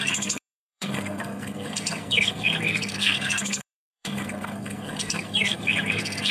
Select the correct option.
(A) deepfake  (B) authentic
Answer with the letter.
A